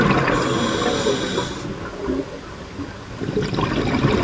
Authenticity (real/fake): real